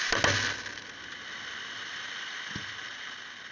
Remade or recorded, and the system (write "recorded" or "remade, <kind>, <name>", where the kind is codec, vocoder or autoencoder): recorded